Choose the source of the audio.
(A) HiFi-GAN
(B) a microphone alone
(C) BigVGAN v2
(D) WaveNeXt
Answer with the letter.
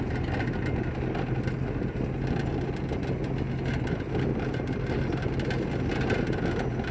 B